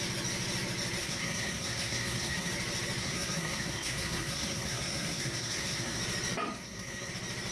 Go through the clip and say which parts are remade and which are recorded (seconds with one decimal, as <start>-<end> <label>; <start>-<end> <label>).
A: 0.0-1.0 recorded; 1.0-2.5 remade; 2.5-3.0 recorded; 3.0-6.0 remade; 6.0-6.6 recorded; 6.6-7.1 remade; 7.1-7.5 recorded

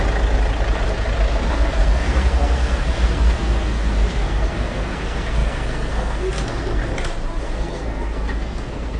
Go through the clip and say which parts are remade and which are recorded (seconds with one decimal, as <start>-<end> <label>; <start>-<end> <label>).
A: 0.0-1.5 recorded; 1.5-6.8 remade; 6.8-7.4 recorded; 7.4-9.0 remade